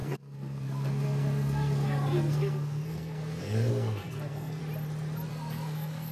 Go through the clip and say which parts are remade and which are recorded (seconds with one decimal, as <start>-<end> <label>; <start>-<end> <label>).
0.0-4.6 remade; 4.6-5.3 recorded; 5.3-6.1 remade